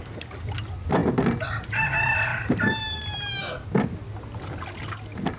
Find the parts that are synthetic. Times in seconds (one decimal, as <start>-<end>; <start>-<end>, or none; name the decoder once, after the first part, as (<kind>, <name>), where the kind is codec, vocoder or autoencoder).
none